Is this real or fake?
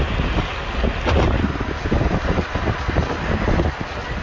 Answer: real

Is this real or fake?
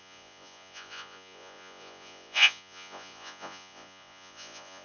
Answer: fake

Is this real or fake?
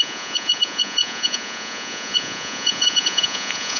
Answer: fake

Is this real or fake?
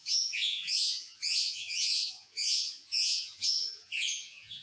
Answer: fake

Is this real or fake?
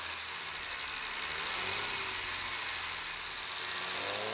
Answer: real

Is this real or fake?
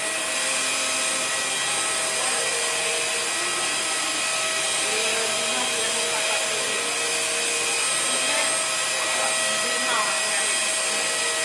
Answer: real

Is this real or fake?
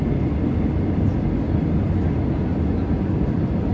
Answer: real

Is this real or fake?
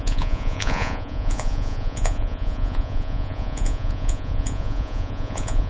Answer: fake